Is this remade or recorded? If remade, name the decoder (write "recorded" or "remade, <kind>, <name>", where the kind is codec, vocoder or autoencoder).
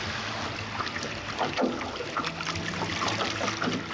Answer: recorded